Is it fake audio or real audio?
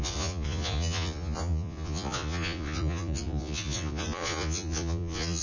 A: fake